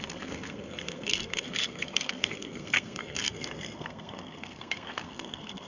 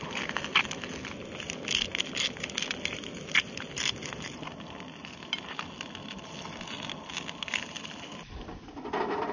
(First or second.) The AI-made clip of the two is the first